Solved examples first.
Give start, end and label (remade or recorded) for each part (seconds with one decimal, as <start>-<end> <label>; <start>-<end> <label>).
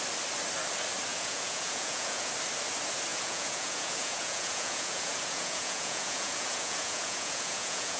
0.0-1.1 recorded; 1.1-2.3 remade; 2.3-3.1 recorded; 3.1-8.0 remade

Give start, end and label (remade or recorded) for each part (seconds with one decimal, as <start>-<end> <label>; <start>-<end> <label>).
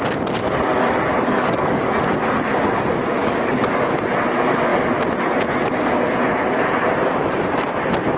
0.0-1.1 recorded; 1.1-1.9 remade; 1.9-3.2 recorded; 3.2-3.7 remade; 3.7-8.2 recorded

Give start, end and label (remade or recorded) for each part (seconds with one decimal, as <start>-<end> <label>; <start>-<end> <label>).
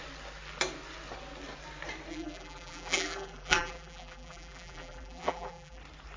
0.0-2.1 recorded; 2.1-5.8 remade; 5.8-6.2 recorded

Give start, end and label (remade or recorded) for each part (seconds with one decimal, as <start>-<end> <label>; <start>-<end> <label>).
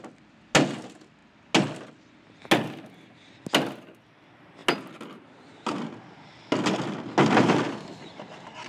0.0-8.7 recorded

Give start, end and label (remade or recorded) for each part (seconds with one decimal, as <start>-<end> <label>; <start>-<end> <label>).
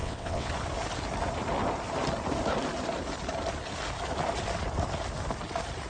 0.0-0.5 remade; 0.5-5.9 recorded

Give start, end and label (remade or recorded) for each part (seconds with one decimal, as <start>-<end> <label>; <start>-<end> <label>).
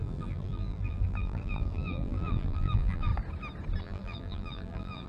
0.0-3.1 remade; 3.1-3.8 recorded; 3.8-5.1 remade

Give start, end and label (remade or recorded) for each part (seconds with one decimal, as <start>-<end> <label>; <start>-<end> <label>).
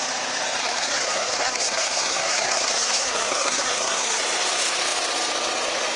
0.0-0.6 recorded; 0.6-4.2 remade; 4.2-6.0 recorded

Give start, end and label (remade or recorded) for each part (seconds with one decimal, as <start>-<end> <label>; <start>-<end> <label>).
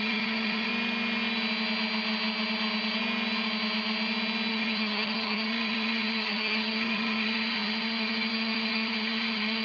0.0-0.7 remade; 0.7-4.5 recorded; 4.5-9.6 remade